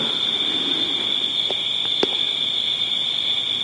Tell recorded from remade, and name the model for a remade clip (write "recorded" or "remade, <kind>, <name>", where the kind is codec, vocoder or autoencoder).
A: recorded